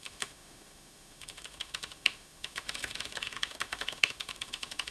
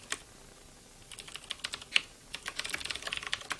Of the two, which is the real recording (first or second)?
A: second